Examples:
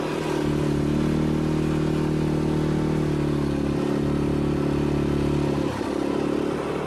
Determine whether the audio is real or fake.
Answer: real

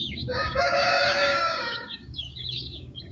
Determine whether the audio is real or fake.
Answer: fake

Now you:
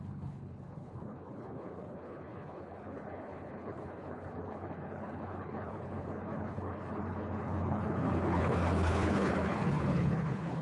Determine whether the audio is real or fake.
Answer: fake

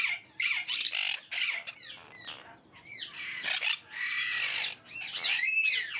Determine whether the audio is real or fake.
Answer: real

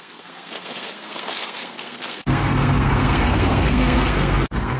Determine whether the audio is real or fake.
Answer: fake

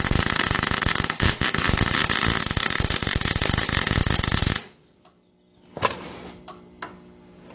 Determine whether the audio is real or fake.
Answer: real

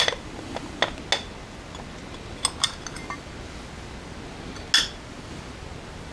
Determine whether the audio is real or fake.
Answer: real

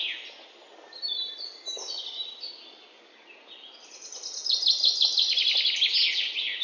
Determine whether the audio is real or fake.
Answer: real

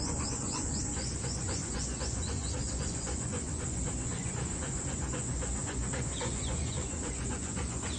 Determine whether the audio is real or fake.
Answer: fake